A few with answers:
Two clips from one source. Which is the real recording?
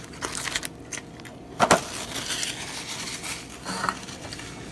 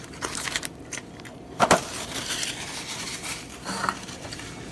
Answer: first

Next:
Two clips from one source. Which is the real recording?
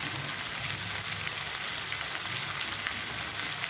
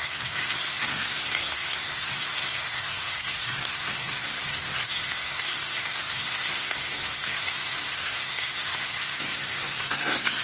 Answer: first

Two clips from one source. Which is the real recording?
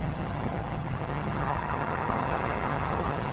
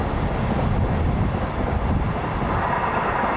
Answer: second